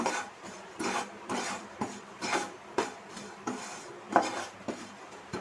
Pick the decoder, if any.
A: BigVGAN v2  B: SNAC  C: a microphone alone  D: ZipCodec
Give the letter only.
A